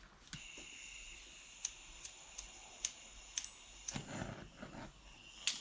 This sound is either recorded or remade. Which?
recorded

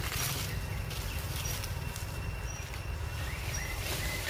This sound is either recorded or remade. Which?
recorded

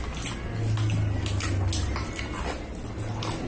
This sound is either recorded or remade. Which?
recorded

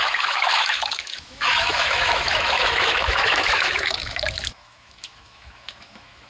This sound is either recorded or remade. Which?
remade